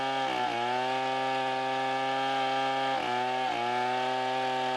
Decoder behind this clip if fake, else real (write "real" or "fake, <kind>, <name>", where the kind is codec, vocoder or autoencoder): real